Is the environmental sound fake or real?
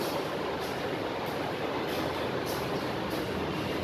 real